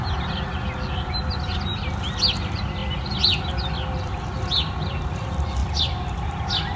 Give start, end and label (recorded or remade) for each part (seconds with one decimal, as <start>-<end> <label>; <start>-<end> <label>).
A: 0.0-6.8 recorded